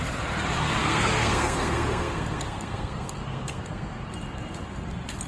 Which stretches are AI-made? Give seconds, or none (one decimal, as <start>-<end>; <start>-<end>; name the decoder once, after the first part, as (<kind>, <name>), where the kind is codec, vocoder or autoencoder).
0.8-4.0 (codec, SNAC)